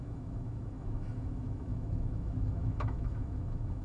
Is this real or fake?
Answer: fake